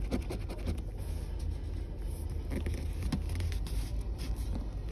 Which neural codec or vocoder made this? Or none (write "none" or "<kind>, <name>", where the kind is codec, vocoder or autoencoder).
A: none